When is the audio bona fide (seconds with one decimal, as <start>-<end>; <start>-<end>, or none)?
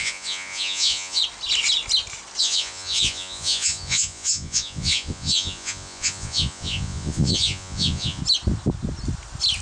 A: 1.2-2.4; 8.2-9.6